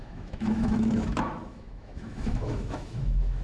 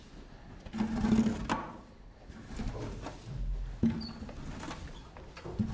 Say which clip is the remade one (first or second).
first